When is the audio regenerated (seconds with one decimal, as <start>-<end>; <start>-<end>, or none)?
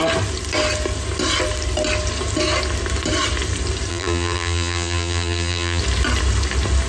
3.9-5.8